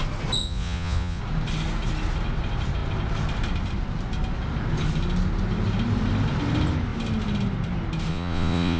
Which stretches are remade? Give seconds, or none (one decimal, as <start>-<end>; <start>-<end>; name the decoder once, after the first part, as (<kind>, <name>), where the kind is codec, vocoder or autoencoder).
0.4-1.2 (vocoder, Vocos); 8.1-8.8